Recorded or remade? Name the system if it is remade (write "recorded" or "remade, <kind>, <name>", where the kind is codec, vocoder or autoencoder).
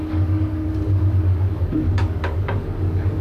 remade, codec, DAC